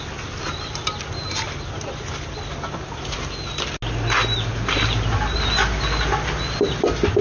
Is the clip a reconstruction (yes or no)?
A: no